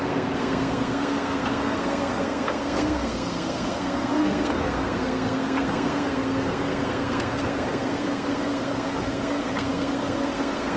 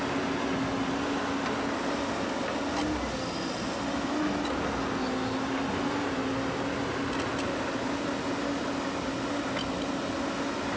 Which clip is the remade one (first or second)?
first